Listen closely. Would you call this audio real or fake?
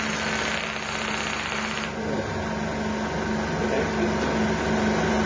real